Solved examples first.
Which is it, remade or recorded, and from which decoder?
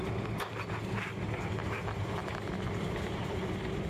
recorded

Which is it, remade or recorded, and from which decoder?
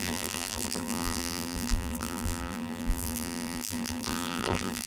remade, vocoder, BigVGAN v2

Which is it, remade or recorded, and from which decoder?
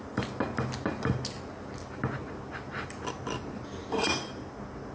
recorded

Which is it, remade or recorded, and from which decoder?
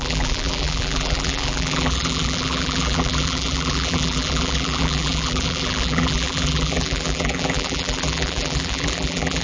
remade, vocoder, BigVGAN v2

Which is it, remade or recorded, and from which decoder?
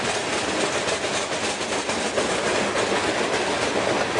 recorded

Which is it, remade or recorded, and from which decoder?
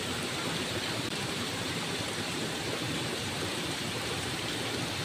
remade, vocoder, BigVGAN v2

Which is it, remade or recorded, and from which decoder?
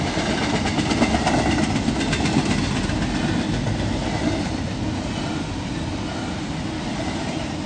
recorded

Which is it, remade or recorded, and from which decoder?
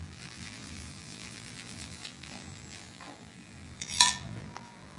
remade, vocoder, BigVGAN v2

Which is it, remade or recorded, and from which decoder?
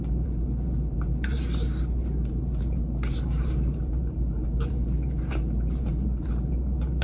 remade, vocoder, BigVGAN v2